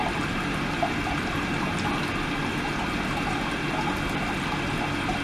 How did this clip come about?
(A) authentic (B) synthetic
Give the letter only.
A